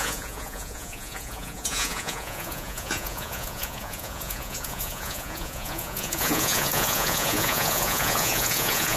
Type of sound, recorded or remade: remade